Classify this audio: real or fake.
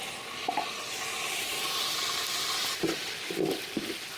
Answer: real